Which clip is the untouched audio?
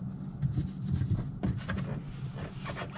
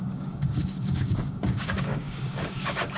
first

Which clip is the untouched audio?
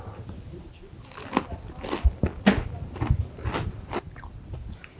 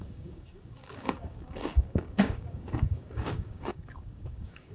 first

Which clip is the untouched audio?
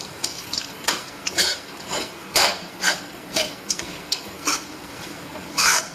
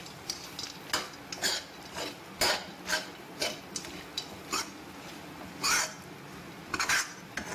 second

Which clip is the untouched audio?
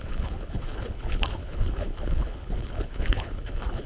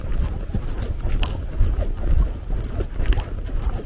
second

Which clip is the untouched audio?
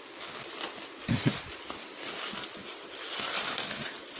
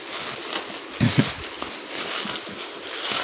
second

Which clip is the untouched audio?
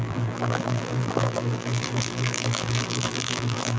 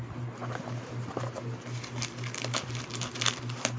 second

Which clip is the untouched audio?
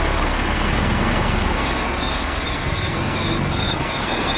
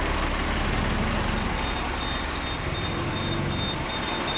second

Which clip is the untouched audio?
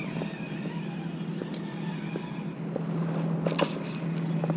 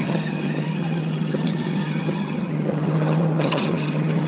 first